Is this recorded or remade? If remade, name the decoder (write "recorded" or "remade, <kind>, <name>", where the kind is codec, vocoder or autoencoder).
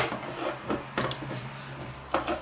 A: recorded